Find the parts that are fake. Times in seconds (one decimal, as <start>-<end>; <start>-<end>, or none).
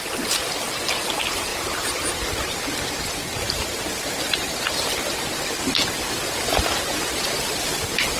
1.5-2.1; 3.3-4.7